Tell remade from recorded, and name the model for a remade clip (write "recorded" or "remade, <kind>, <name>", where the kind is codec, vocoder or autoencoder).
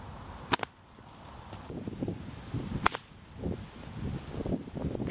recorded